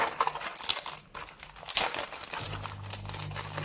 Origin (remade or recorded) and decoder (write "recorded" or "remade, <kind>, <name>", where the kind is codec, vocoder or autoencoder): recorded